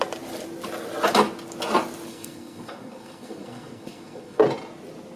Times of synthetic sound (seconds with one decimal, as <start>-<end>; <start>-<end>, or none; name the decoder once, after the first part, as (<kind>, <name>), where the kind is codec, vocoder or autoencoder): 2.1-4.4 (codec, SNAC)